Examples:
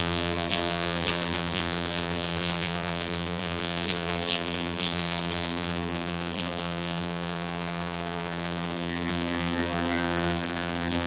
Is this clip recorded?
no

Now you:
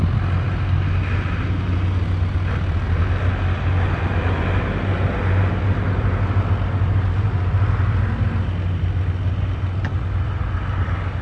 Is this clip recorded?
yes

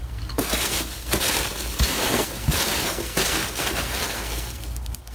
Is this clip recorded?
no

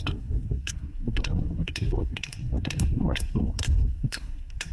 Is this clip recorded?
no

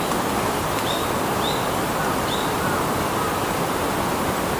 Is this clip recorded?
yes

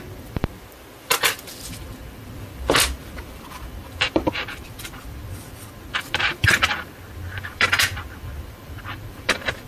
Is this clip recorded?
no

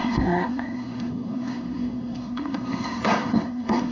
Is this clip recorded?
no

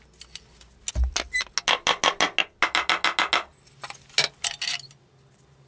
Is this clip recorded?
yes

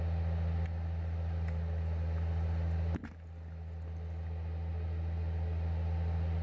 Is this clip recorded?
yes